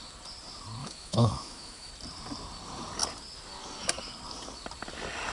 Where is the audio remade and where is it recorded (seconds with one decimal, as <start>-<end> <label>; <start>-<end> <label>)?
0.0-0.8 recorded; 0.8-1.9 remade; 1.9-5.3 recorded